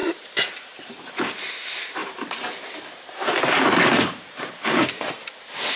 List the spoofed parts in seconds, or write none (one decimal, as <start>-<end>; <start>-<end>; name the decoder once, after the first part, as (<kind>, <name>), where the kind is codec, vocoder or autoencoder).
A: 0.0-5.8 (vocoder, BigVGAN v2)